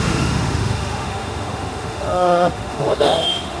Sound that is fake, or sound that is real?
fake